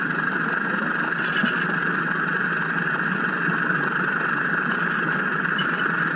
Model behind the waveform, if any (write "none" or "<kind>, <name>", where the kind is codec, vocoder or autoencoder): none